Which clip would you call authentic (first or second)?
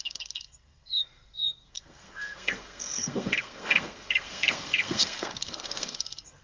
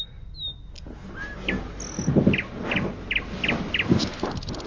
second